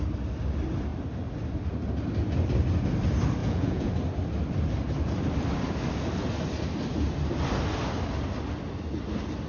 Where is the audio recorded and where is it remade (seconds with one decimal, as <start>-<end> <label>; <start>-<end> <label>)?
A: 0.0-3.4 recorded; 3.4-3.9 remade; 3.9-9.5 recorded

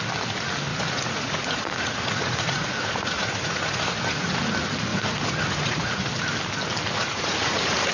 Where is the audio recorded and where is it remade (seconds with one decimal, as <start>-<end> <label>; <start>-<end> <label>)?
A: 0.0-0.7 recorded; 0.7-4.4 remade; 4.4-4.9 recorded; 4.9-6.0 remade; 6.0-7.0 recorded; 7.0-7.9 remade

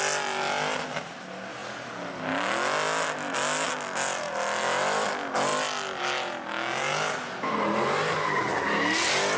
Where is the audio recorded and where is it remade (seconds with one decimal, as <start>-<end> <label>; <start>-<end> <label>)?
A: 0.0-9.4 recorded

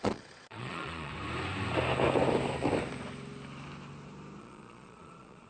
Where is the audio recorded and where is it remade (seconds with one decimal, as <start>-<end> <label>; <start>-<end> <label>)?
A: 0.0-1.1 remade; 1.1-4.4 recorded; 4.4-5.5 remade

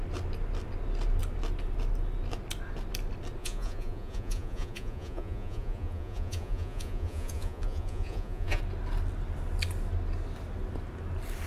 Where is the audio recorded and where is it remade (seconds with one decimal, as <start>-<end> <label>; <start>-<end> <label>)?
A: 0.0-3.4 recorded; 3.4-8.6 remade; 8.6-11.5 recorded

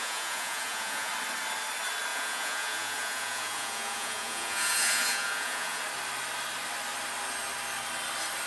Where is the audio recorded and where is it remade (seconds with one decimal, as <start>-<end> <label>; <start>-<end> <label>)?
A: 0.0-1.1 remade; 1.1-2.1 recorded; 2.1-5.8 remade; 5.8-8.5 recorded

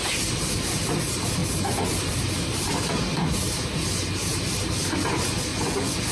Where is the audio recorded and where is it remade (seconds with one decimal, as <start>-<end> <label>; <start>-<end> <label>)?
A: 0.0-5.5 recorded; 5.5-6.1 remade